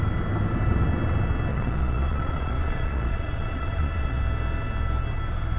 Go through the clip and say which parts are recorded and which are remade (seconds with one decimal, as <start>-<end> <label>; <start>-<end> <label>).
0.0-1.5 recorded; 1.5-4.2 remade; 4.2-5.6 recorded